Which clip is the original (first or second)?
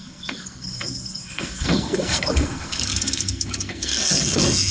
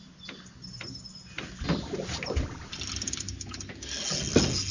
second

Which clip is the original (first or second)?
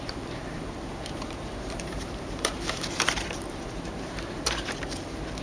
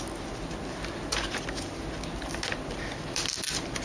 second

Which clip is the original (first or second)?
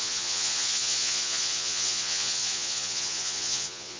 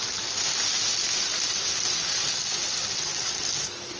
second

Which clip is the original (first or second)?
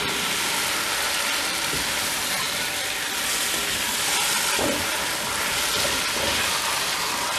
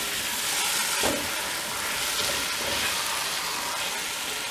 second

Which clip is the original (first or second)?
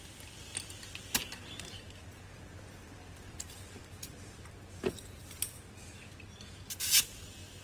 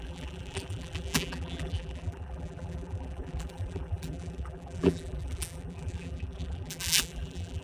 first